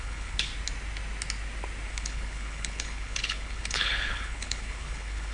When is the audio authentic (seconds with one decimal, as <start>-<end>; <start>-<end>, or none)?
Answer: 0.5-1.9